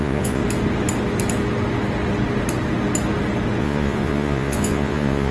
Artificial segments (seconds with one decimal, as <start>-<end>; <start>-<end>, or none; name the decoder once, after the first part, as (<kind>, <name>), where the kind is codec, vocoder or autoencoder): 0.0-0.4 (vocoder, Vocos); 3.6-5.3

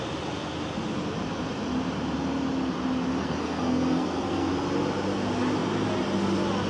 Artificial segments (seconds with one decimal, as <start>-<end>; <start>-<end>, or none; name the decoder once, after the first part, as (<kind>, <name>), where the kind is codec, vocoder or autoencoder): 3.2-4.5 (codec, SNAC)